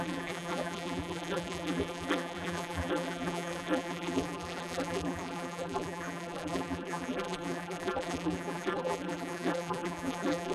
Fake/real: fake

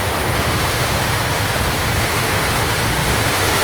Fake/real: fake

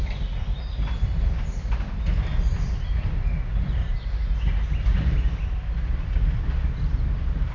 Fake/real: real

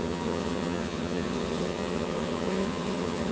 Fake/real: fake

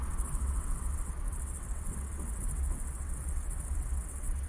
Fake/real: fake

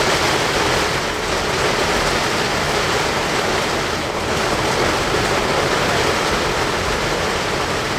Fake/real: real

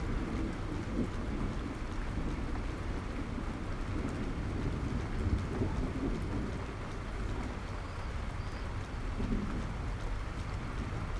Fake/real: real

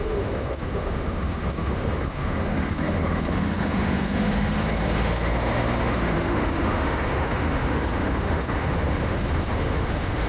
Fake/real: fake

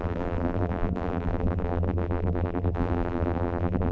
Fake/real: fake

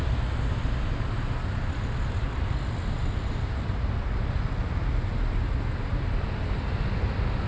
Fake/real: real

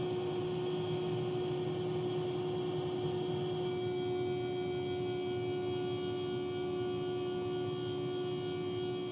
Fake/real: real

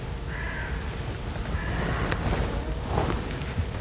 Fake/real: real